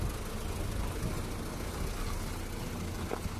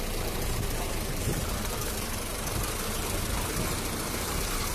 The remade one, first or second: second